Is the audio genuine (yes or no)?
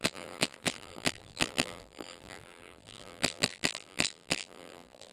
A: no